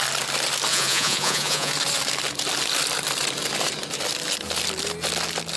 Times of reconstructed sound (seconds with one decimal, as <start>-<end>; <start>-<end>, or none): 0.7-1.7